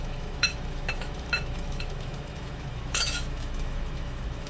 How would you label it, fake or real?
fake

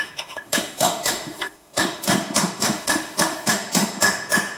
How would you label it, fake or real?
fake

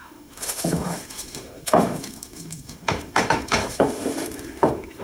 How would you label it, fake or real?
fake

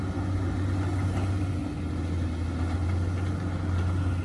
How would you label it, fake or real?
real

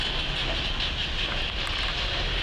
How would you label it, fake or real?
real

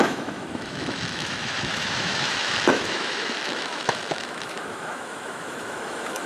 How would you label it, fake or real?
fake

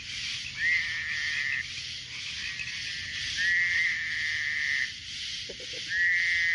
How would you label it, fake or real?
real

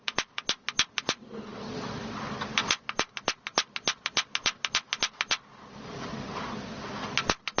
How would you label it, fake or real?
real